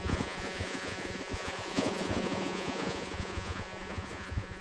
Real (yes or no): no